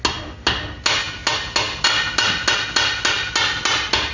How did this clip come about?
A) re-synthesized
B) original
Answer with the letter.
B